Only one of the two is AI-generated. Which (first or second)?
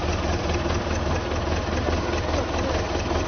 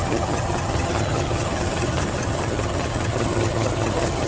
second